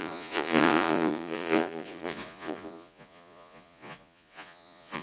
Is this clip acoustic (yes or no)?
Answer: no